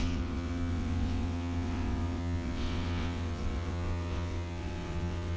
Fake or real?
fake